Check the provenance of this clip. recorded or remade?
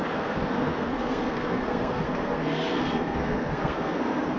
remade